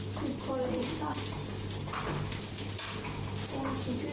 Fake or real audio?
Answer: real